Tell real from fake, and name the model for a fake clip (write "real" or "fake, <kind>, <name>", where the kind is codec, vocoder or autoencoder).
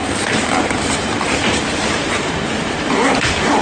fake, vocoder, BigVGAN v2